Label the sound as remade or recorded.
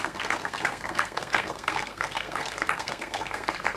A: remade